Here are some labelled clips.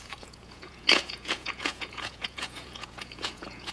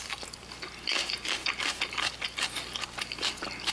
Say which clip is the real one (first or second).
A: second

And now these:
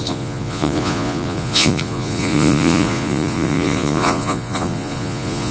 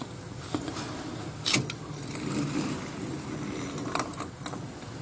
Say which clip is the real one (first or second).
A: second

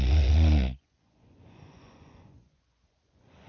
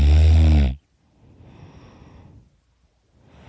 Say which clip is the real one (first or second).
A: second